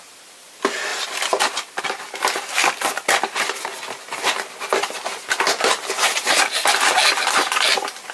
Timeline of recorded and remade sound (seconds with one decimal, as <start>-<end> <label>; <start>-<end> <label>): 0.0-8.1 recorded